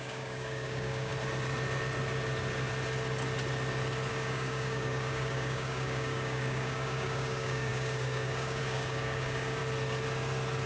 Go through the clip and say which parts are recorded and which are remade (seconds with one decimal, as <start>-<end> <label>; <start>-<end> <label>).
0.0-1.1 remade; 1.1-4.1 recorded; 4.1-9.6 remade; 9.6-10.7 recorded